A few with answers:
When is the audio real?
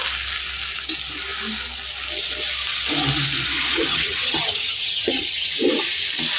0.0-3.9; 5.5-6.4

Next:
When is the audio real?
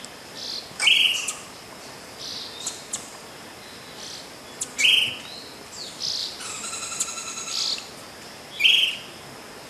0.0-6.2; 7.0-9.7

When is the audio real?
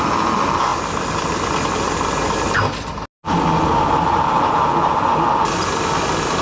0.0-6.4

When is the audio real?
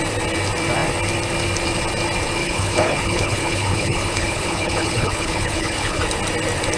0.0-2.4; 6.0-6.8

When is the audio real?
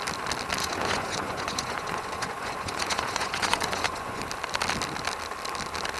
0.0-0.6; 4.2-6.0